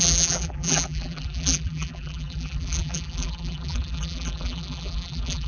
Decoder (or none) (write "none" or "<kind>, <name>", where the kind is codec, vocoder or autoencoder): vocoder, BigVGAN v2